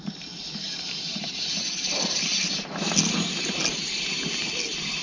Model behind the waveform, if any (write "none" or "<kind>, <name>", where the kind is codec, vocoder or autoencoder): none